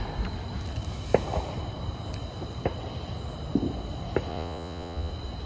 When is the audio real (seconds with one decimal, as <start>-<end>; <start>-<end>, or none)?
0.0-4.3; 5.1-5.5